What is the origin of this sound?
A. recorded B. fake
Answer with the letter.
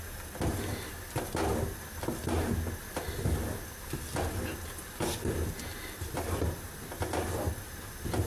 A